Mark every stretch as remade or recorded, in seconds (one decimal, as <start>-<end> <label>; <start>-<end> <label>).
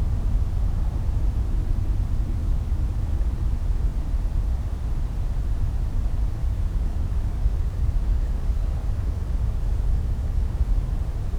0.0-2.4 recorded; 2.4-3.3 remade; 3.3-6.4 recorded; 6.4-10.8 remade; 10.8-11.4 recorded